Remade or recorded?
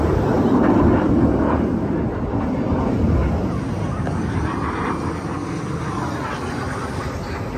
recorded